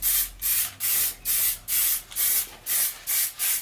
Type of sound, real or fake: real